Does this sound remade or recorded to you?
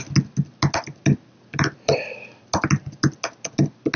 recorded